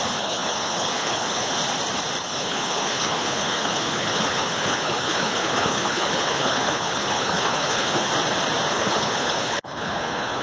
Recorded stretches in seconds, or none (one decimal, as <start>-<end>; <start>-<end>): 1.6-2.2; 8.1-8.7